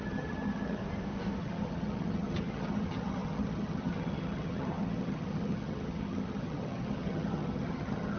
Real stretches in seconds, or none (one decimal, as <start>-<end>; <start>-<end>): 0.8-1.4